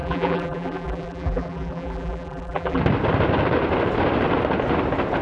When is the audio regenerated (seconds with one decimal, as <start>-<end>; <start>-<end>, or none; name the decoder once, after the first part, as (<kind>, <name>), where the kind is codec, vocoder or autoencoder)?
0.0-2.8 (vocoder, BigVGAN v2)